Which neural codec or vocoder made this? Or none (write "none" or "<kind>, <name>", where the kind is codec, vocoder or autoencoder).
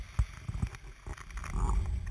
none